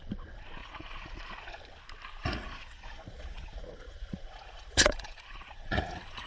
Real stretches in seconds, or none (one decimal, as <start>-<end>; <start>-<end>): 0.0-0.6; 1.2-2.2